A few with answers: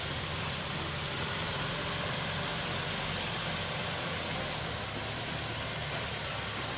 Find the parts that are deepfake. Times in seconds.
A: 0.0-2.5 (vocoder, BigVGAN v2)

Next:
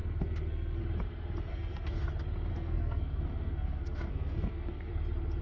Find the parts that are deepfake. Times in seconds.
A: 0.0-0.8 (codec, SNAC); 1.5-2.0; 2.5-4.9

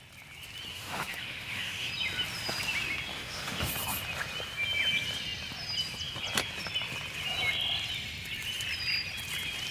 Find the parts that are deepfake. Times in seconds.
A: 0.7-1.9 (autoencoder, DAC-VAE); 3.1-3.7